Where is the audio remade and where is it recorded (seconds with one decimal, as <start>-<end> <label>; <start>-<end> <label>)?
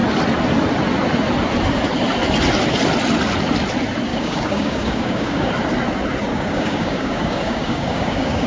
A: 0.0-4.1 recorded; 4.1-5.5 remade; 5.5-6.3 recorded; 6.3-8.5 remade